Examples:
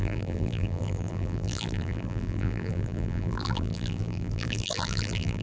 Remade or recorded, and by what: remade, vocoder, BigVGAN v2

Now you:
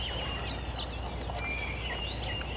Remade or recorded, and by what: recorded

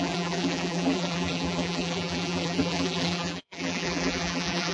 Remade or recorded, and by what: remade, vocoder, BigVGAN v2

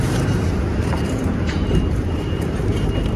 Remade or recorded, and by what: remade, vocoder, BigVGAN v2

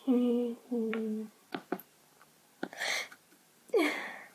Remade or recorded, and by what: remade, vocoder, BigVGAN v2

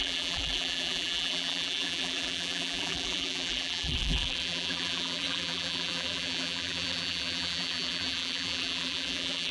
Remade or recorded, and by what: remade, vocoder, BigVGAN v2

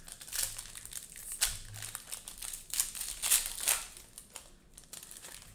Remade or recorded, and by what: recorded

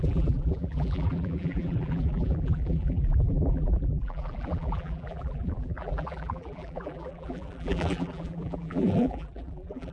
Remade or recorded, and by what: remade, vocoder, BigVGAN v2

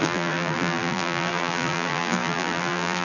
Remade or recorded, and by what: remade, vocoder, BigVGAN v2